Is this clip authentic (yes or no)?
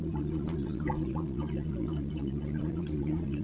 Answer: no